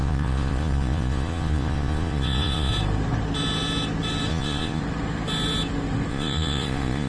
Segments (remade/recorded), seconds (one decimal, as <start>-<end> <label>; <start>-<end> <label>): 0.0-2.7 remade; 2.7-4.3 recorded; 4.3-4.8 remade; 4.8-6.1 recorded; 6.1-7.1 remade